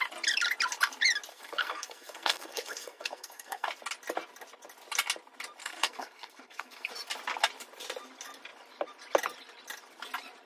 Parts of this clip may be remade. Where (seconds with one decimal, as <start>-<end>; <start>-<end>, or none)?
1.3-3.7; 5.6-6.9